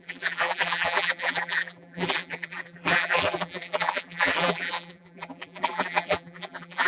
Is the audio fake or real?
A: fake